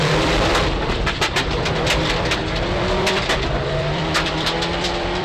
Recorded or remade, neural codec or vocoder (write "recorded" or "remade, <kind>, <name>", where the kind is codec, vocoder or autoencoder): remade, vocoder, BigVGAN v2